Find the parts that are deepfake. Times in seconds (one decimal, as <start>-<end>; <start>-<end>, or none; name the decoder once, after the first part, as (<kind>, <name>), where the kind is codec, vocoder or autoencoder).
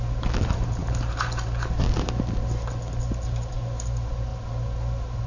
none